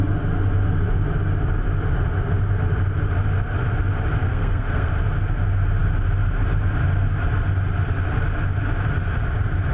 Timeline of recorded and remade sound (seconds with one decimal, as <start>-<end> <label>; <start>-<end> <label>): 0.0-4.2 recorded; 4.2-4.9 remade; 4.9-9.7 recorded